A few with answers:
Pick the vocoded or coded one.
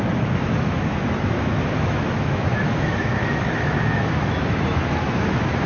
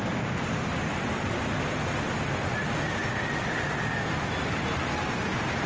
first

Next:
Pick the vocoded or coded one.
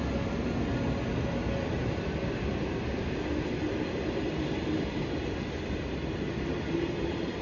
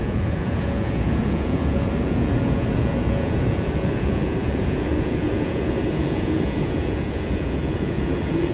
second